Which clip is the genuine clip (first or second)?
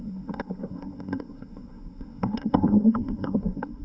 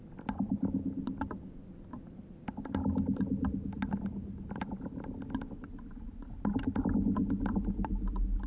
second